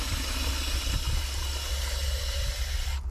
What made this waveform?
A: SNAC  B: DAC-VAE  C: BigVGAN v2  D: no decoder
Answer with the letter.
D